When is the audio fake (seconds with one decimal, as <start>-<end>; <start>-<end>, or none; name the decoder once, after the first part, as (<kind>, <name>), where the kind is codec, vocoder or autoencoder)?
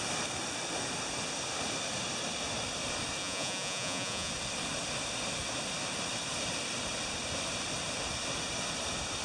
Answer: 3.2-4.3 (vocoder, Vocos)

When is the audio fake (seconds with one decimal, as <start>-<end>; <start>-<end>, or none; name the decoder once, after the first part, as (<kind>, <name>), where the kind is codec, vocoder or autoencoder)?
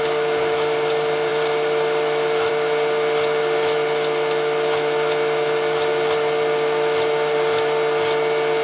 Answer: none